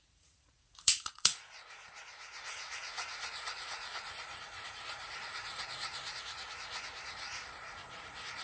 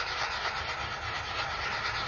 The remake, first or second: first